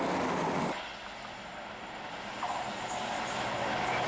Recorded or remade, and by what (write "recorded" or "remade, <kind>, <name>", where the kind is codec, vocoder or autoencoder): recorded